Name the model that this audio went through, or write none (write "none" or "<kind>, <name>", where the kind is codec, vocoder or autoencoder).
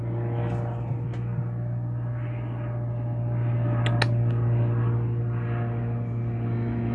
none